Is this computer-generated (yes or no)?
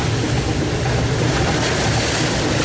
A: no